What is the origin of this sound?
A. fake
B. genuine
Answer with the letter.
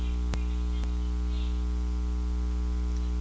B